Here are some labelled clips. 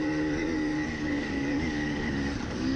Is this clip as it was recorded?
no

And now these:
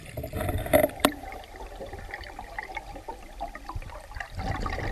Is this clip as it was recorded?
no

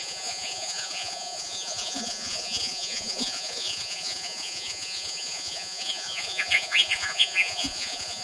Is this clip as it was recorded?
no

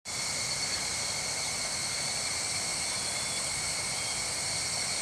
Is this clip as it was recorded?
yes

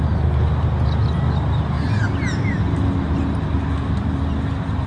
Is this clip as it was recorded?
yes